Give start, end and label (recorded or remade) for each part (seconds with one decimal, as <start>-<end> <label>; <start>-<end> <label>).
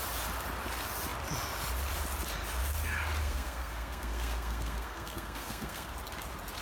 0.0-3.2 recorded; 3.2-5.9 remade; 5.9-6.6 recorded